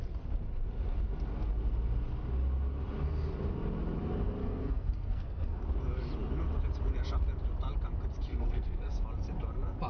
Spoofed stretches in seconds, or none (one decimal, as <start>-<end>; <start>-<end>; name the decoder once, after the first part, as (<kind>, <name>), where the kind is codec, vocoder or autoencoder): 4.4-5.6 (codec, SNAC); 8.3-8.9